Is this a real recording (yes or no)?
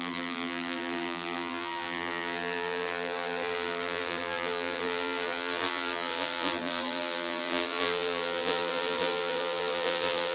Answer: no